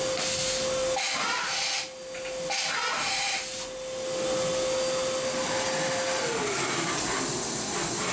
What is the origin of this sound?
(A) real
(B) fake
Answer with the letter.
A